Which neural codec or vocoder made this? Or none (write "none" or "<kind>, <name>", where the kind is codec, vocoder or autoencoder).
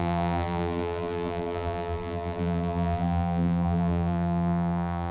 vocoder, BigVGAN v2